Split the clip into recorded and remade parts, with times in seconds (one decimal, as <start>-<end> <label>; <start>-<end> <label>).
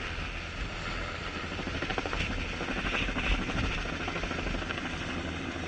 0.0-5.7 recorded